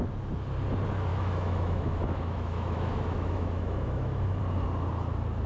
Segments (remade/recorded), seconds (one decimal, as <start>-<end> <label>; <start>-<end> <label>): 0.0-1.1 recorded; 1.1-4.4 remade; 4.4-5.5 recorded